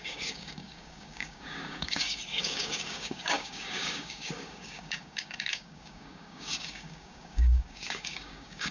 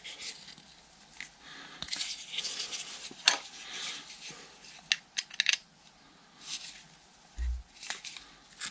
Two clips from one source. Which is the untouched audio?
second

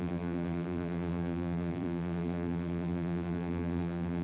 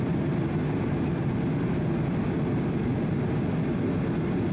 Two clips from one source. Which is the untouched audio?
second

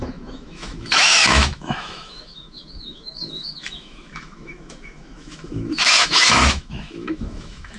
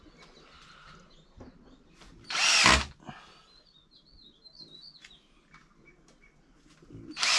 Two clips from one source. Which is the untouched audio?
second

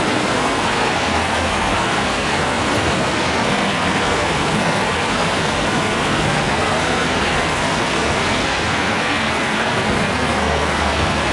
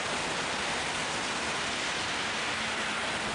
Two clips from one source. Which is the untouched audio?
second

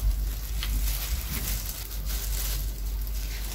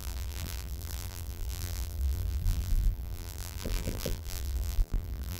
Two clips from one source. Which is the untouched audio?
first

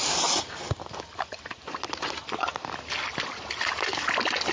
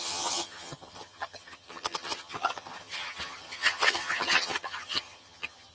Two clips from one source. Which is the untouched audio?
first